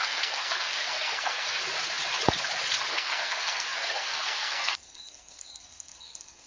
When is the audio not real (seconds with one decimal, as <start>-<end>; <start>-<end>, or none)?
0.0-1.6; 2.9-6.5